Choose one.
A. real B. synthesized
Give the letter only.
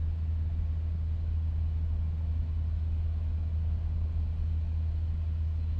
A